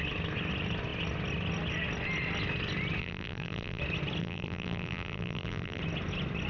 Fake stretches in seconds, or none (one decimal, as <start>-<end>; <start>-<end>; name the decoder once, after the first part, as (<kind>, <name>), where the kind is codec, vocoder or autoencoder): 3.0-3.8 (vocoder, BigVGAN v2); 4.2-5.8